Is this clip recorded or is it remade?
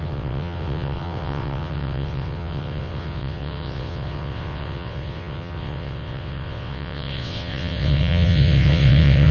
remade